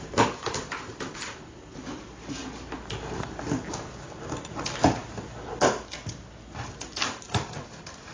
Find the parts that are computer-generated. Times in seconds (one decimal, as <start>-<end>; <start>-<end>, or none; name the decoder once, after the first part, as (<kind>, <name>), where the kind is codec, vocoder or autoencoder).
none